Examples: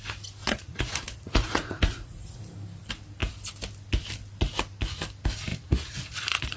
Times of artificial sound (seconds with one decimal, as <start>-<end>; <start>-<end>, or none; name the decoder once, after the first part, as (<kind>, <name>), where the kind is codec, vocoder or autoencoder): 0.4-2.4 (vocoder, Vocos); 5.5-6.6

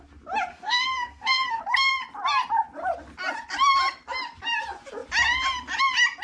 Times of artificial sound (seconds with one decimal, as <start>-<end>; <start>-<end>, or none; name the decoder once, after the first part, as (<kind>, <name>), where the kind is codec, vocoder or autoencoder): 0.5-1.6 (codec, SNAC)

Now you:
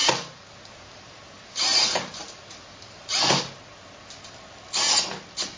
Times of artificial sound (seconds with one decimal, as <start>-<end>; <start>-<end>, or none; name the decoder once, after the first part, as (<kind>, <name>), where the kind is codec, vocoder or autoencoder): 0.0-3.4 (vocoder, BigVGAN v2)

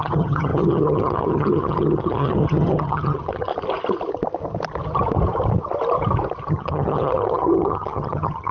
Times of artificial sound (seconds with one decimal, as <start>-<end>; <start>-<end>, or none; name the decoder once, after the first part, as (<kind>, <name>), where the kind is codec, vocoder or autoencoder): 0.0-3.5 (vocoder, HiFi-GAN); 6.5-8.5

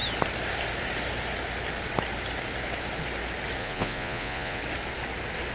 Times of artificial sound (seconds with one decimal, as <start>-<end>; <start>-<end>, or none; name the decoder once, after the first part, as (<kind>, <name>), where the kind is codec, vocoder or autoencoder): 3.6-4.6 (vocoder, Vocos)

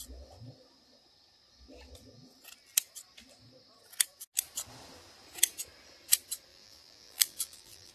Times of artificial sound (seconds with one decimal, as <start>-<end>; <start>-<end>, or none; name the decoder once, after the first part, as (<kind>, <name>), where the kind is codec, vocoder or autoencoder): 6.5-7.9 (vocoder, BigVGAN v2)

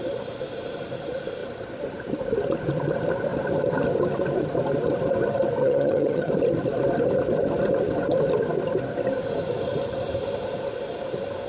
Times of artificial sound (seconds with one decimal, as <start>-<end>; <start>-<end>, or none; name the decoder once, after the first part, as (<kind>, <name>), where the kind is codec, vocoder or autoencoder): 5.6-6.3 (vocoder, HiFi-GAN)